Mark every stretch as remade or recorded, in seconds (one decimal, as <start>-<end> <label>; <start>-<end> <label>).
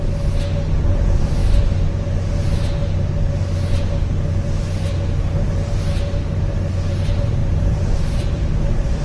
0.0-7.4 recorded; 7.4-8.6 remade; 8.6-9.0 recorded